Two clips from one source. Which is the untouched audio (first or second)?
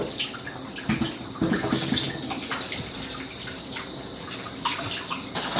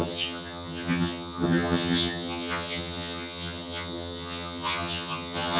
first